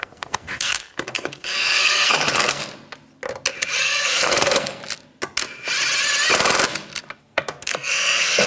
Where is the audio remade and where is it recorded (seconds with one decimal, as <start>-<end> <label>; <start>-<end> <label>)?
0.0-2.6 remade; 2.6-3.8 recorded; 3.8-4.8 remade; 4.8-7.2 recorded; 7.2-8.5 remade